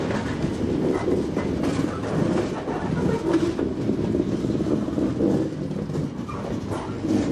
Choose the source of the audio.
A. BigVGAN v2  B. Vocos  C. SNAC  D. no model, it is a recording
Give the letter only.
D